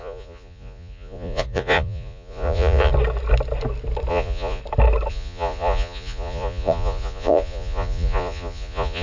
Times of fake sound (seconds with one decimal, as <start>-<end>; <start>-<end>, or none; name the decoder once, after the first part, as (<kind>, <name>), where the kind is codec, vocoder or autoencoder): 0.0-2.9 (vocoder, Vocos); 4.1-4.6; 5.1-9.0